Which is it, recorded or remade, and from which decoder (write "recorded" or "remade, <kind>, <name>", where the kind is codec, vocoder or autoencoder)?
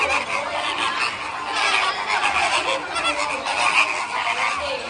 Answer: recorded